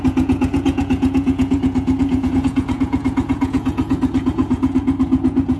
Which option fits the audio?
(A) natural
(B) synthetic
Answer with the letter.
B